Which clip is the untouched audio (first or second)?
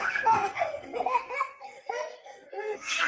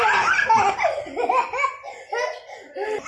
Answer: second